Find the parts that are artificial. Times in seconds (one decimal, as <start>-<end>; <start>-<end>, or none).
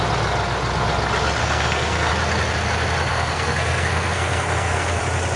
1.4-2.1; 3.1-5.0